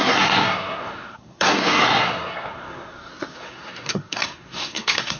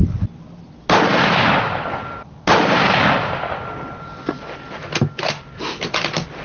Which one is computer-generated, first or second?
first